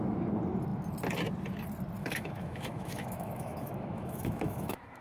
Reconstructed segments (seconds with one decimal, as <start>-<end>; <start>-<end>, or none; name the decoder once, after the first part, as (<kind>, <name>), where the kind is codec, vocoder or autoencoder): 2.0-5.0 (autoencoder, DAC-VAE)